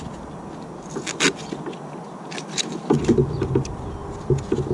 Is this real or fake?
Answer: real